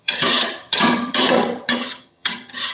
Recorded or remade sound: remade